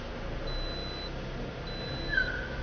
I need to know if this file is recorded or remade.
recorded